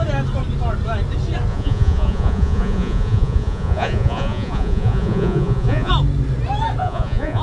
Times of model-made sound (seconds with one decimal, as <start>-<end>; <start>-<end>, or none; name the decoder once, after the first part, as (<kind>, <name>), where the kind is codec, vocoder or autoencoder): 1.5-5.9 (vocoder, Vocos); 6.8-7.4